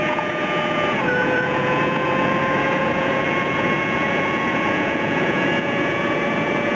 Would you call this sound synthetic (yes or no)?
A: yes